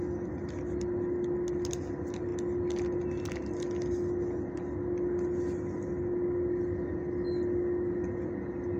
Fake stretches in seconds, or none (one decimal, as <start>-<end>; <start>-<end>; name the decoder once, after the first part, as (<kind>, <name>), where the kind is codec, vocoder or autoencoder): none